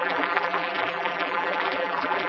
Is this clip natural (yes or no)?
no